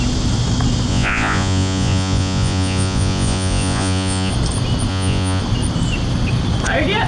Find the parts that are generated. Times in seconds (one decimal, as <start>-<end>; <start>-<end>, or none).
0.9-4.3; 4.9-5.4